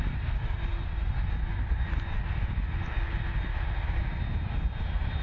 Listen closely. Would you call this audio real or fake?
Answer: real